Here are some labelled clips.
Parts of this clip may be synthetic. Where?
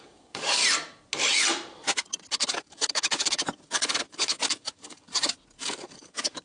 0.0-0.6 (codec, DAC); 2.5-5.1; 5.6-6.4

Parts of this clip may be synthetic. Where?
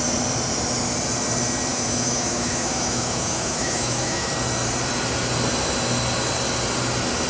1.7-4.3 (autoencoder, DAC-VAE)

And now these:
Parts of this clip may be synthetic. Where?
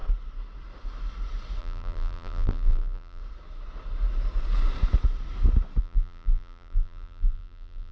1.6-3.2 (vocoder, BigVGAN v2); 5.8-7.9